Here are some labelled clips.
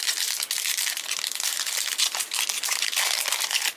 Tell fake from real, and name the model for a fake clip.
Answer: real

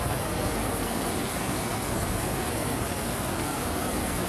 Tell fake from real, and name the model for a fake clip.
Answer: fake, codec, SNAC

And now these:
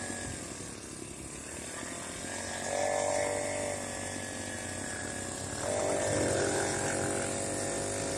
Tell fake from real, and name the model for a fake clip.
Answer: real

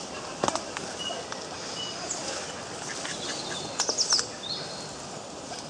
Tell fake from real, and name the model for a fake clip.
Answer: real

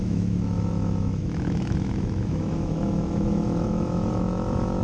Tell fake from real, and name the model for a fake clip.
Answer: fake, autoencoder, DAC-VAE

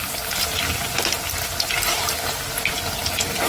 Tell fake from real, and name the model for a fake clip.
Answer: real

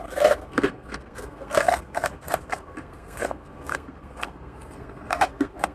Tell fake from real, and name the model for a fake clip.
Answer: fake, codec, SNAC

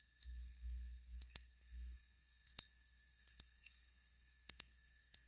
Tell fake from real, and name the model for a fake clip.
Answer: fake, codec, SNAC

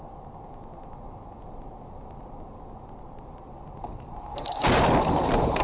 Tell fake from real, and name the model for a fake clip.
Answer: real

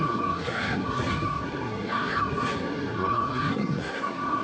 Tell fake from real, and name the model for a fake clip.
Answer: fake, codec, SNAC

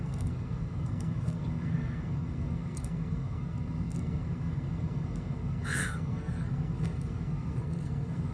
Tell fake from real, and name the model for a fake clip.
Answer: fake, codec, SNAC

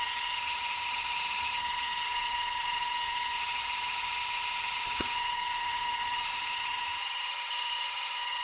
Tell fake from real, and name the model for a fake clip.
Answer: fake, vocoder, HiFi-GAN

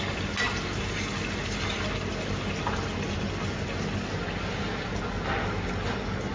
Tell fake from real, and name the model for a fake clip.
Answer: real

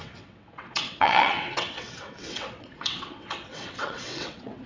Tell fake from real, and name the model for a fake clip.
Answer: fake, vocoder, WaveNeXt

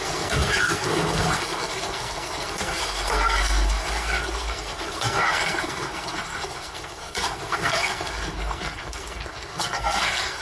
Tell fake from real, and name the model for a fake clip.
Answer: fake, codec, SNAC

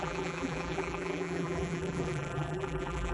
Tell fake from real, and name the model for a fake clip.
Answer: fake, vocoder, BigVGAN v2